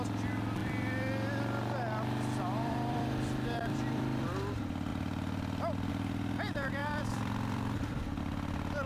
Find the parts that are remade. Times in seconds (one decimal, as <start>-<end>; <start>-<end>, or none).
0.6-4.2; 6.8-8.2